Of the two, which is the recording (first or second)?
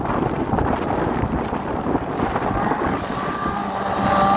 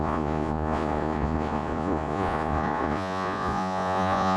first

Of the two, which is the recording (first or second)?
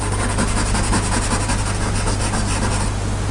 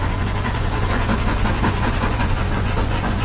first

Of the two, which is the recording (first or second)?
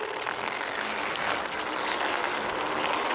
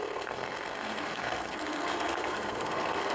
first